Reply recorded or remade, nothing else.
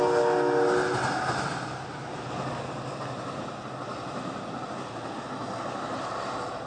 recorded